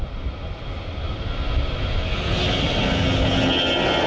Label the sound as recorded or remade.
recorded